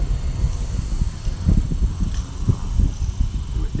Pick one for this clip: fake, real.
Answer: real